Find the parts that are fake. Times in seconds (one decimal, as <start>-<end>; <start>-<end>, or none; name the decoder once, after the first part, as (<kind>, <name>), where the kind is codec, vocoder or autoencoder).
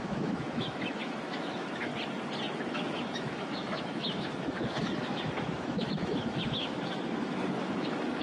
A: 0.0-1.9 (autoencoder, DAC-VAE); 2.6-8.2